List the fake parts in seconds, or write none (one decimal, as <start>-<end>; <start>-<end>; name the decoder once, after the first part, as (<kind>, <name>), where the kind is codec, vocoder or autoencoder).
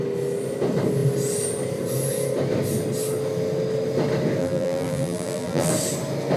4.4-5.7 (vocoder, BigVGAN v2)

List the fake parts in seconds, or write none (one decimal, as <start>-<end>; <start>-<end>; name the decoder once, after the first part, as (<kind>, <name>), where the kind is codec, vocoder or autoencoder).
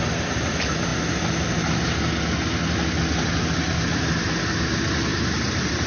5.1-5.9 (vocoder, BigVGAN v2)